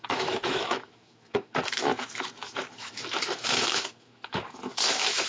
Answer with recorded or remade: remade